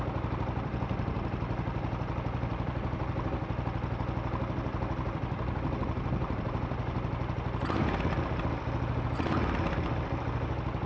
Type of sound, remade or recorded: recorded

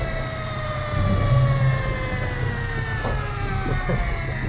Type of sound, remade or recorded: recorded